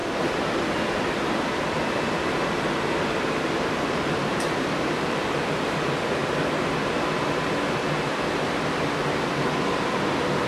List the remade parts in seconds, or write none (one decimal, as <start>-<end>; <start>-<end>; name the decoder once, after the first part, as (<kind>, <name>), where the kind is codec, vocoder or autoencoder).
3.2-6.2 (vocoder, BigVGAN v2)